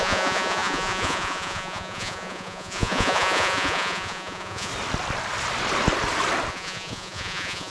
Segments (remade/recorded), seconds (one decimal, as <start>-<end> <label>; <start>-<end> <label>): 0.0-4.7 remade; 4.7-6.5 recorded; 6.5-7.7 remade